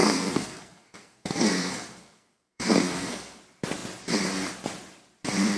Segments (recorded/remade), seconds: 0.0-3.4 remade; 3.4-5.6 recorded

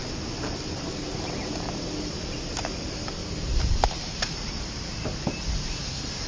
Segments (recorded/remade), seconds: 0.0-3.2 recorded; 3.2-4.9 remade; 4.9-6.3 recorded